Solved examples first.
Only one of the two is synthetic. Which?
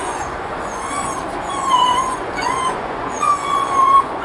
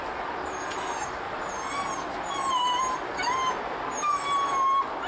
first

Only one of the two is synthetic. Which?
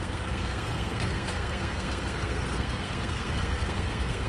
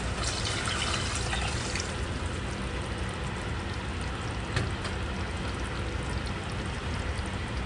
first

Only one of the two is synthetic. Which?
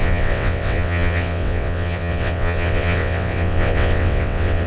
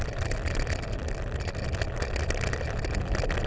first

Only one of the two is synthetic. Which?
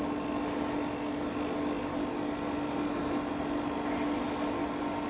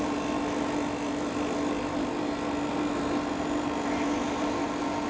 second